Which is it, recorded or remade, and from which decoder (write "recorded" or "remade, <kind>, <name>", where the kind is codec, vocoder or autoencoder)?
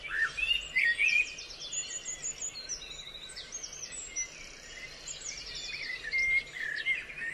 recorded